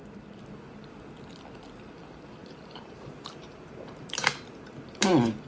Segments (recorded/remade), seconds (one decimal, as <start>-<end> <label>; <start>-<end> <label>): 0.0-2.4 recorded; 2.4-5.5 remade